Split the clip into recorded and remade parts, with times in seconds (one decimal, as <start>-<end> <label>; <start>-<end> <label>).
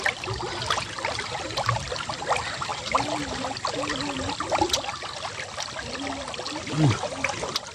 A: 0.0-7.7 recorded